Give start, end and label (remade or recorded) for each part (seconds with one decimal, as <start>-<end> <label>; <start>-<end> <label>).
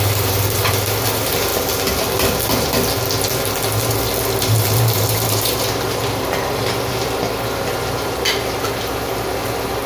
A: 0.0-1.5 remade; 1.5-4.4 recorded; 4.4-9.9 remade